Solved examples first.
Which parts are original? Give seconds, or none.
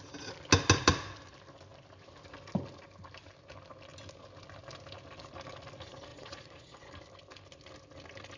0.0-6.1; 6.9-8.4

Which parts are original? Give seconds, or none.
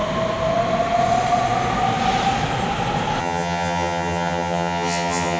0.0-3.2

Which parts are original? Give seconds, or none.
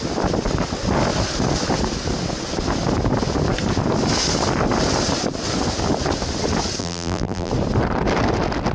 0.0-6.8; 7.5-8.7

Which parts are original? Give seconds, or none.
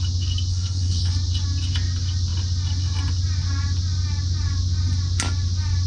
0.0-0.5; 1.1-5.9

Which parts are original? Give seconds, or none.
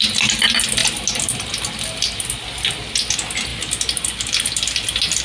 0.0-5.2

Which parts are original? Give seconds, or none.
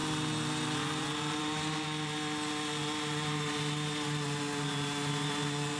0.0-5.8